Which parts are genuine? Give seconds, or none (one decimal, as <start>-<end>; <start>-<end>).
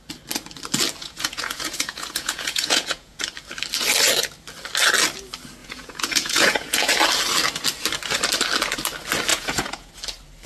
0.0-1.0; 3.2-5.6; 6.9-9.3; 9.9-10.5